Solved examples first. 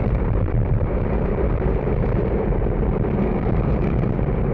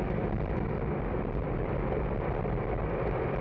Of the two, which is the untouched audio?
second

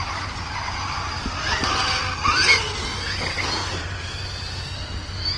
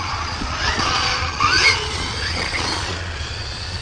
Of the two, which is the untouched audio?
first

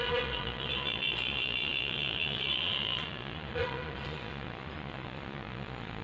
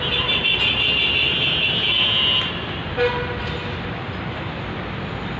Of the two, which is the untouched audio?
second